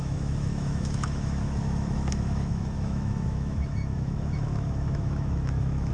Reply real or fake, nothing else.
fake